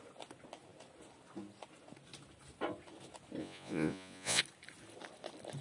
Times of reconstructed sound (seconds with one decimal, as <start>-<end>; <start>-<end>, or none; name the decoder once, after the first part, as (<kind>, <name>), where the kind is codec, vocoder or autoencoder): 3.4-4.4 (vocoder, Vocos)